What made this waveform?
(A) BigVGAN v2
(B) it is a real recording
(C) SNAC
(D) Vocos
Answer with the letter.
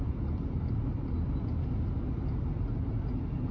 B